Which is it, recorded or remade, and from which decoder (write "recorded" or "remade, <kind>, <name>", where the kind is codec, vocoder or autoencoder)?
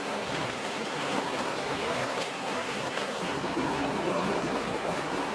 remade, codec, SNAC